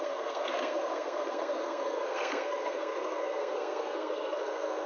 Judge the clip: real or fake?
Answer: fake